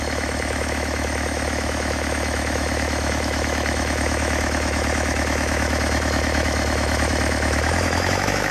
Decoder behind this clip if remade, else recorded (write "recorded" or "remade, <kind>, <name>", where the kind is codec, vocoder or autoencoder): remade, autoencoder, DAC-VAE